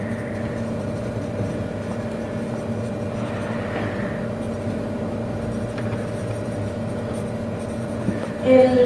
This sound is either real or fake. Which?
real